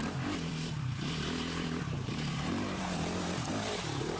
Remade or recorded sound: remade